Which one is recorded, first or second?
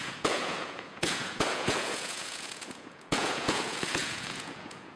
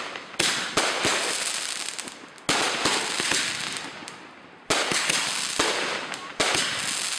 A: second